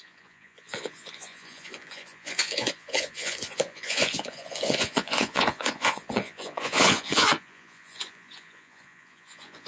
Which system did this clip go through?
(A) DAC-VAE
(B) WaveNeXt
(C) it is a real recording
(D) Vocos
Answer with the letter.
D